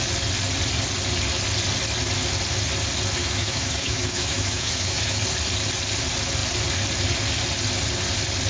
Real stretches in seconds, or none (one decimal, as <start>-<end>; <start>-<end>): 0.0-3.2; 5.2-8.5